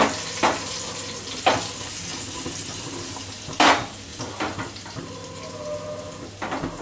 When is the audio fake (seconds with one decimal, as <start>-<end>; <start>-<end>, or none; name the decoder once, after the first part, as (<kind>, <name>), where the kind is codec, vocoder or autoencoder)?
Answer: none